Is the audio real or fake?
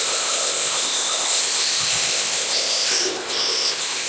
fake